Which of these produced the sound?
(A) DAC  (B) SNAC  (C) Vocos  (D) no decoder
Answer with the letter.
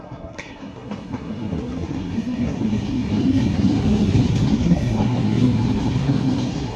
B